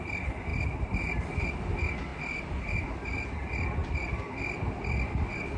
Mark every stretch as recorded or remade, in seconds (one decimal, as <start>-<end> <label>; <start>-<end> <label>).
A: 0.0-5.6 recorded